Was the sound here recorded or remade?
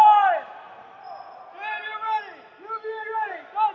recorded